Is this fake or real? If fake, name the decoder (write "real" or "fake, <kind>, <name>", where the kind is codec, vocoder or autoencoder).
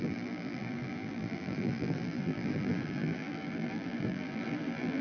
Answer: fake, vocoder, BigVGAN v2